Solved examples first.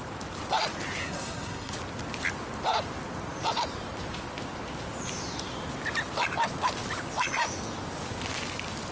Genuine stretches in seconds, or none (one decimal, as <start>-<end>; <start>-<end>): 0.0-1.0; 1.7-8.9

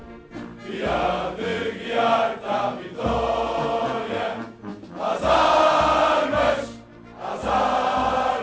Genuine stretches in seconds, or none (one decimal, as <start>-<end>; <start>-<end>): 0.0-8.4

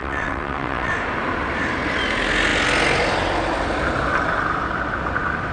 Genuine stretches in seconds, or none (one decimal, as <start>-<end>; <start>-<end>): 0.9-5.5

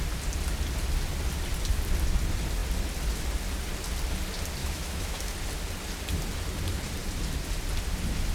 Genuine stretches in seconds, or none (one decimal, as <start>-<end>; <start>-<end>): 0.0-4.6; 5.3-8.3

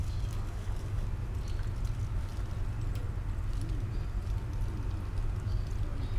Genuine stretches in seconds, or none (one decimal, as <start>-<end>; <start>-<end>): 1.1-6.2

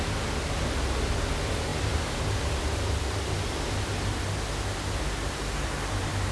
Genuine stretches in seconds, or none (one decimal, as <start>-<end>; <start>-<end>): 0.0-6.3

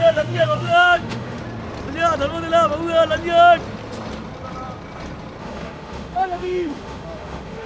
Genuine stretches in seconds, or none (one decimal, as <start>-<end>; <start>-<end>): 1.4-5.4